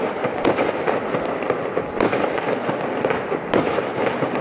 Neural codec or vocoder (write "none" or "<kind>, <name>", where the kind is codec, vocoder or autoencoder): none